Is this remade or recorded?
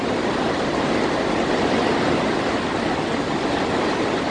recorded